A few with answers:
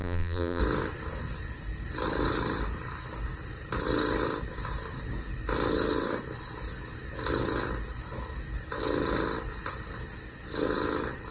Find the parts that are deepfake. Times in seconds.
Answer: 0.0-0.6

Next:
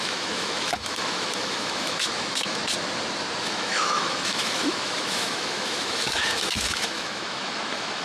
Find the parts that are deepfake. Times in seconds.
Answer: 0.0-2.6; 3.4-8.0

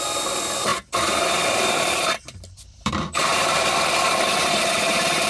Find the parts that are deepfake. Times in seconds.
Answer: 0.0-5.3

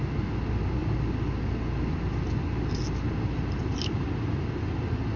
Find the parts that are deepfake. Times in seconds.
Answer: none

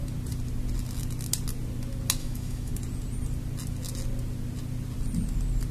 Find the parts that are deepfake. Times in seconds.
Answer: 2.2-2.7